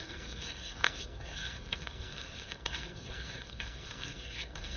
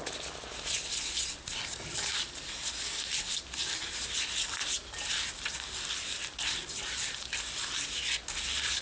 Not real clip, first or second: first